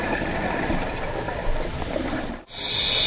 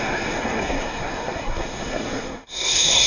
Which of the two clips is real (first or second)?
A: first